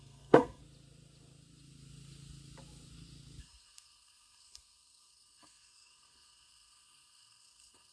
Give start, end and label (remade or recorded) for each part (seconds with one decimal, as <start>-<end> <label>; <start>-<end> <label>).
0.0-0.6 remade; 0.6-3.4 recorded; 3.4-7.9 remade